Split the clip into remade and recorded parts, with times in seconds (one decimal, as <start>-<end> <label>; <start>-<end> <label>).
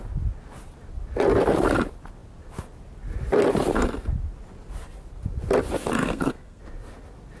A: 0.0-6.0 recorded; 6.0-6.6 remade; 6.6-7.4 recorded